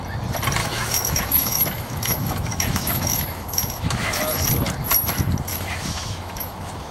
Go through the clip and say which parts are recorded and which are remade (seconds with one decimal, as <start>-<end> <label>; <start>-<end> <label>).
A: 0.0-0.6 recorded; 0.6-4.2 remade; 4.2-5.5 recorded; 5.5-6.9 remade